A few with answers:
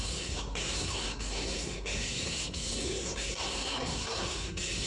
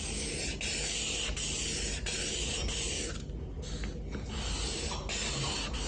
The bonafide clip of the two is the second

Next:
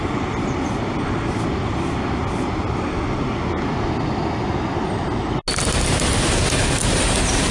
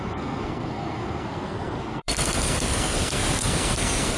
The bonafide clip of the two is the first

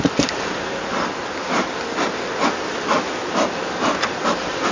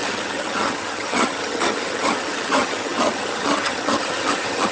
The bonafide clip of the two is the first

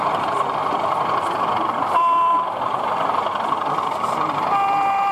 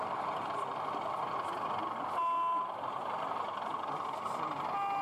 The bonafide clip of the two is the second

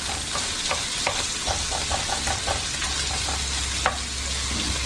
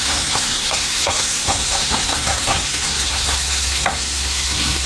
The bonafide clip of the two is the first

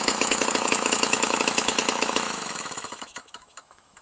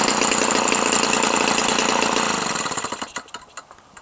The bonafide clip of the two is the second